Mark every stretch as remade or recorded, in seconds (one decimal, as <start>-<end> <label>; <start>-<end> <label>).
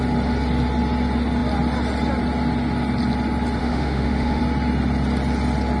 0.0-3.6 recorded; 3.6-4.4 remade; 4.4-5.8 recorded